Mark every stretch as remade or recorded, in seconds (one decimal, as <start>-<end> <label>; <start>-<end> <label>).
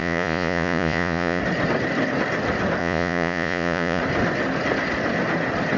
0.0-1.4 remade; 1.4-2.8 recorded; 2.8-4.0 remade; 4.0-5.8 recorded